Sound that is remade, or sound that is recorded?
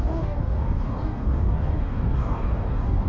remade